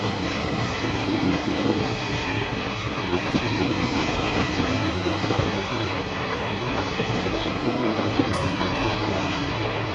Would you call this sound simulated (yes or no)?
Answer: yes